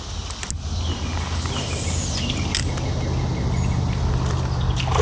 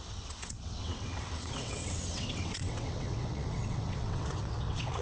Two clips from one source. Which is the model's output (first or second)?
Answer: second